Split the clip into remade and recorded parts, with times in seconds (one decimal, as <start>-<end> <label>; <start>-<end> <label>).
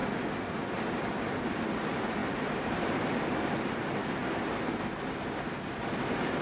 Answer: 0.0-2.2 recorded; 2.2-3.5 remade; 3.5-6.4 recorded